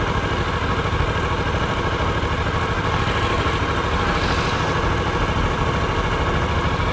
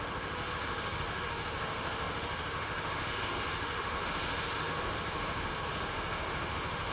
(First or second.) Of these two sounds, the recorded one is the first